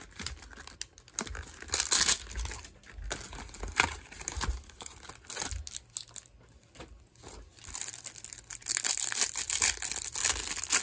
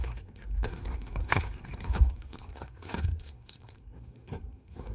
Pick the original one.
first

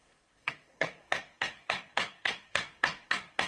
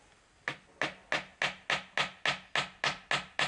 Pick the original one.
second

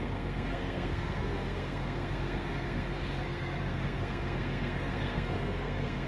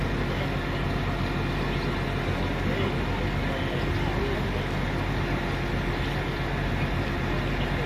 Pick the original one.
second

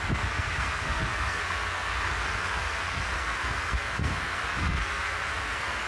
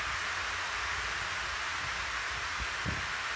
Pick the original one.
second